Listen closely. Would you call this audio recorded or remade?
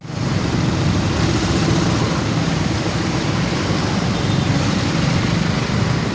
recorded